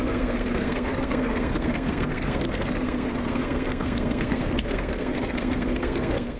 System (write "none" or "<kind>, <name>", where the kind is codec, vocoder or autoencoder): codec, SNAC